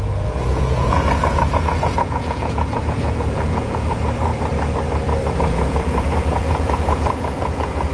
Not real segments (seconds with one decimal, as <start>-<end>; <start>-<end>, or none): 0.0-4.3; 5.3-7.9